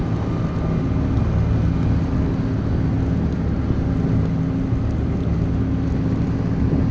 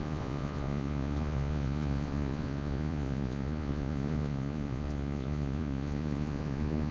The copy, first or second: second